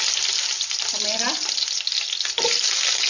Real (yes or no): yes